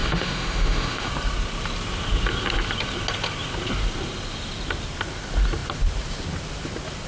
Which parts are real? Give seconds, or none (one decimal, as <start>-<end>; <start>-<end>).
1.1-7.1